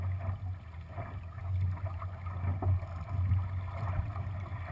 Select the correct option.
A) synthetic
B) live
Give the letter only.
B